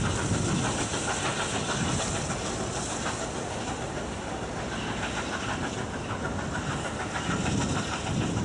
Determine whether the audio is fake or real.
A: real